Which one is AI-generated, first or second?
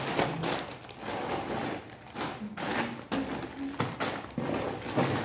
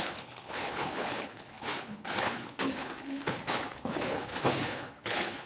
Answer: second